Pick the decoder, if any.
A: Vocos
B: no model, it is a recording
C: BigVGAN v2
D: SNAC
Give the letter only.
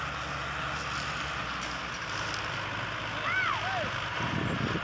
B